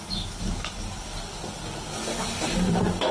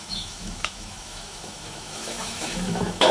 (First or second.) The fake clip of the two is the second